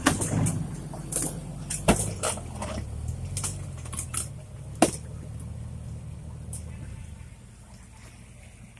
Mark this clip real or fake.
real